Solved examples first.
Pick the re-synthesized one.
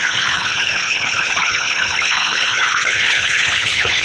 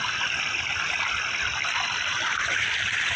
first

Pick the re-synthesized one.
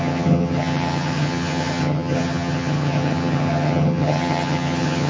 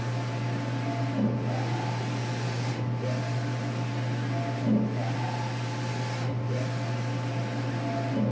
first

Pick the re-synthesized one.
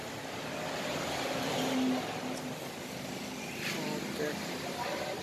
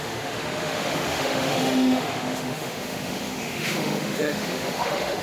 second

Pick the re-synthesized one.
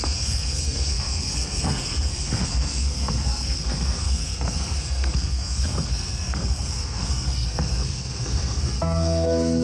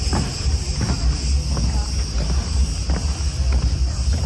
first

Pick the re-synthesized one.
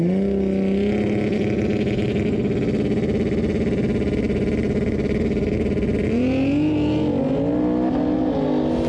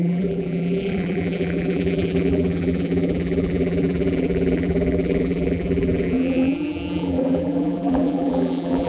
second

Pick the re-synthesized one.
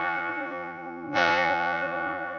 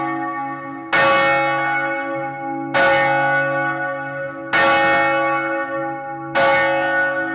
first